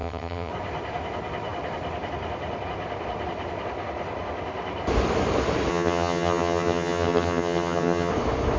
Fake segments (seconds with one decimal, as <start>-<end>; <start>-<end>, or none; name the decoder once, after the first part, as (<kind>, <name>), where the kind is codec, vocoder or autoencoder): 0.0-0.5 (vocoder, HiFi-GAN); 5.7-8.1